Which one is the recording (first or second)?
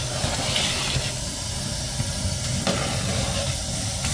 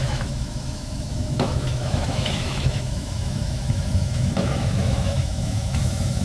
first